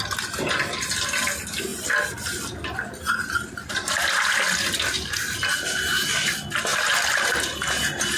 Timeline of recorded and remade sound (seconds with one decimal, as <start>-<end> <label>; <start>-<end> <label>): 0.0-8.2 recorded